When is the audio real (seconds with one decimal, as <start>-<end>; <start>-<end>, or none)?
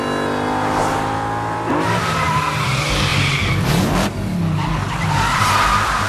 0.0-6.1